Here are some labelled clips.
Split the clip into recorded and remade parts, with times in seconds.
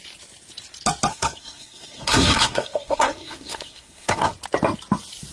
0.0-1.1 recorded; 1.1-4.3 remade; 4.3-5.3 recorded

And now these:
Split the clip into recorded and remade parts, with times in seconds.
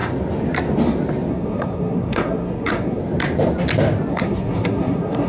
0.0-1.3 recorded; 1.3-3.0 remade; 3.0-4.1 recorded; 4.1-5.3 remade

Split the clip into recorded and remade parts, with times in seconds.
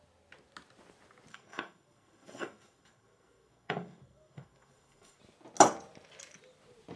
0.0-1.3 recorded; 1.3-5.2 remade; 5.2-7.0 recorded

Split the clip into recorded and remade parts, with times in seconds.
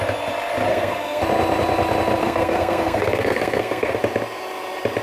0.0-0.7 recorded; 0.7-1.2 remade; 1.2-2.2 recorded; 2.2-4.0 remade; 4.0-5.0 recorded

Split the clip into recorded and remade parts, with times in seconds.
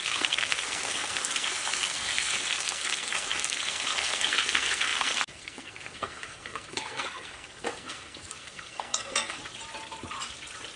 0.0-9.4 remade; 9.4-10.8 recorded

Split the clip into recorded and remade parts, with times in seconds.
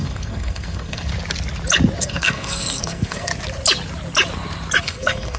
0.0-1.1 remade; 1.1-2.0 recorded; 2.0-3.3 remade; 3.3-4.8 recorded; 4.8-5.4 remade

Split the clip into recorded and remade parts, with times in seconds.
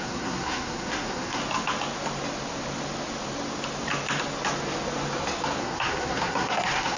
0.0-1.4 remade; 1.4-5.6 recorded; 5.6-7.0 remade